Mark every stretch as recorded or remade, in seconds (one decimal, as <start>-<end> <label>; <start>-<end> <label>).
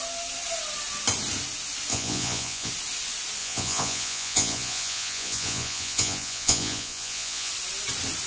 0.0-1.9 recorded; 1.9-2.7 remade; 2.7-3.4 recorded; 3.4-7.5 remade; 7.5-8.3 recorded